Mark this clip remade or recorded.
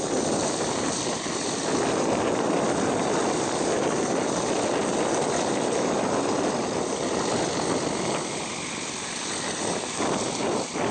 recorded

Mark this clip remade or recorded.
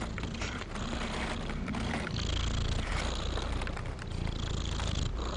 recorded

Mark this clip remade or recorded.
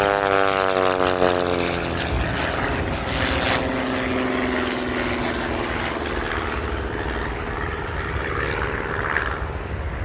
recorded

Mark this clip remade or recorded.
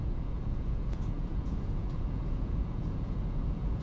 remade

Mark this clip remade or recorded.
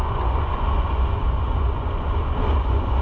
remade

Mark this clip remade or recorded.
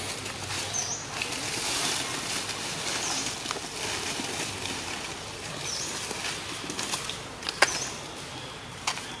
recorded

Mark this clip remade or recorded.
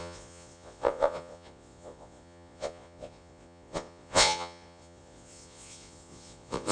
remade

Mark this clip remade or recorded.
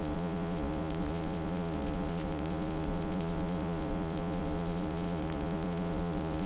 remade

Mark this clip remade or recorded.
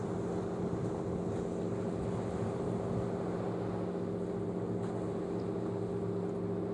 recorded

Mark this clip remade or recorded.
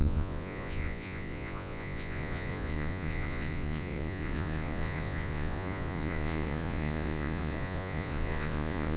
remade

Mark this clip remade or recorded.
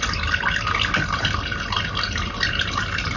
recorded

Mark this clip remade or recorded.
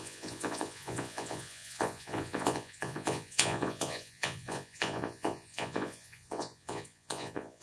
remade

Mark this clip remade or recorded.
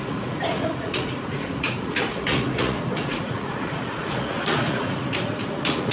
remade